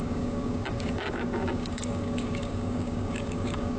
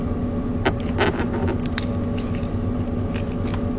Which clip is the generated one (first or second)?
first